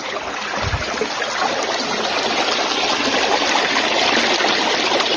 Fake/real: real